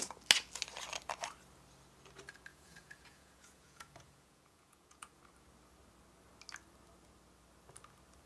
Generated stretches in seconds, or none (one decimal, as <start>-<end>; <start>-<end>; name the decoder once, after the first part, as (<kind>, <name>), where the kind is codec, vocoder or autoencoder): 2.5-5.2 (vocoder, Vocos)